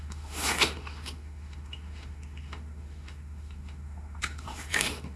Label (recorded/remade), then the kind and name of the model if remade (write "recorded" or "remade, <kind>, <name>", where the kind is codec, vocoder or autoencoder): remade, autoencoder, DAC-VAE